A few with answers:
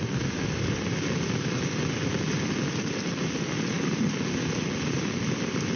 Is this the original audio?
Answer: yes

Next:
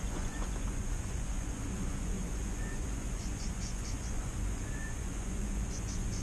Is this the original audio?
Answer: no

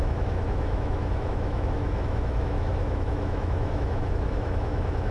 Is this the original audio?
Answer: no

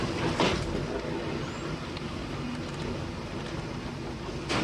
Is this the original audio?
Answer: yes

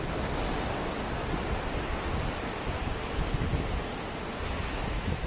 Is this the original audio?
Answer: yes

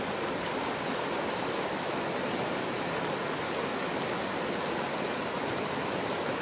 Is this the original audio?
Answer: yes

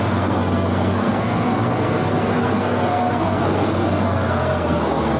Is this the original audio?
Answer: no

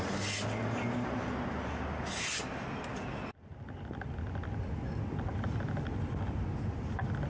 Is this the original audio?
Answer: yes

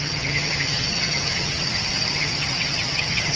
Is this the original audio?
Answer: no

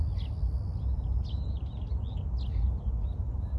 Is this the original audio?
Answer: yes